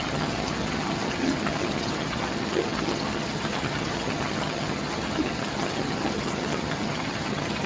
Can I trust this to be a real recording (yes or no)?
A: no